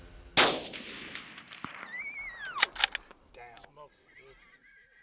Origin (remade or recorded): recorded